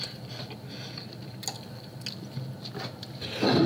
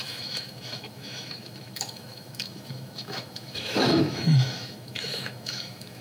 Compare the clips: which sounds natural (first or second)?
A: first